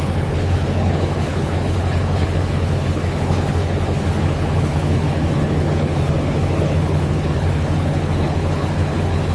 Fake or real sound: fake